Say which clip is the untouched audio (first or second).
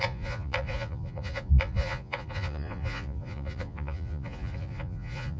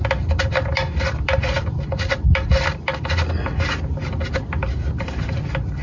second